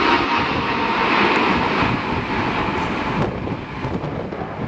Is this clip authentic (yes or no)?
yes